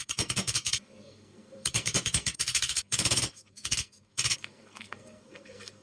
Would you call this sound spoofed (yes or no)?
yes